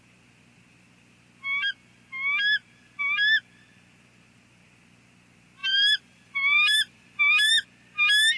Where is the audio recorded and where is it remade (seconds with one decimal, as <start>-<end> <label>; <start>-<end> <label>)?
0.0-5.6 recorded; 5.6-7.5 remade; 7.5-8.4 recorded